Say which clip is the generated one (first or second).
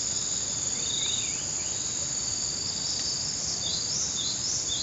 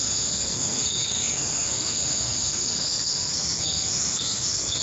second